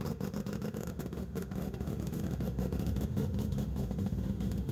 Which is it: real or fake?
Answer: fake